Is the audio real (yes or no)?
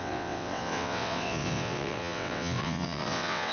no